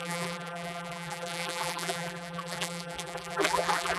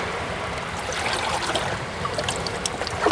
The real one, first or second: second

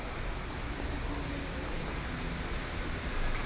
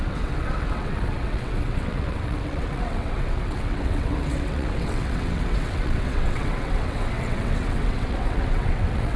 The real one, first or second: first